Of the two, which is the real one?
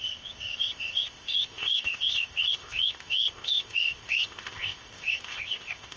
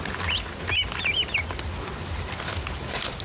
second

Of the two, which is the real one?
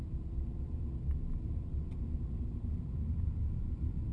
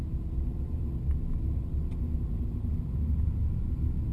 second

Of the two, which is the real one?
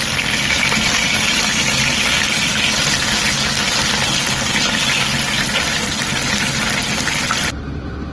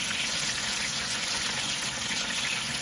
first